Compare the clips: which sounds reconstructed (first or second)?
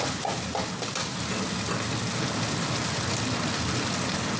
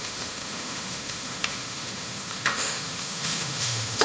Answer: second